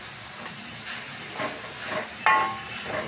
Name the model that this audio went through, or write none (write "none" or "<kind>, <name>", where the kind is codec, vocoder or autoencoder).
none